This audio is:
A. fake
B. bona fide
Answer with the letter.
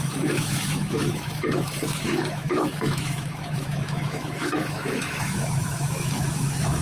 A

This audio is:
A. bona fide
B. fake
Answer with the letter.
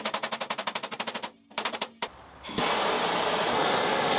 A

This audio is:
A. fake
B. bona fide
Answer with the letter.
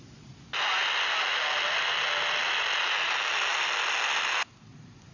B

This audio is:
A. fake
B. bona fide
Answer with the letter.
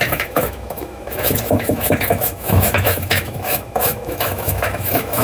A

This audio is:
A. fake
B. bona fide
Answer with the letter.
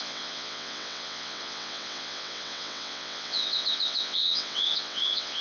A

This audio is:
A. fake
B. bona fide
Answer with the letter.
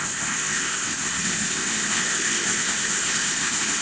A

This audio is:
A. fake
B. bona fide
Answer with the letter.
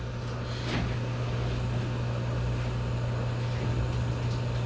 B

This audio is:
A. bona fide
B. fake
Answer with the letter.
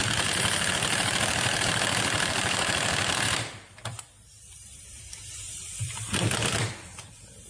B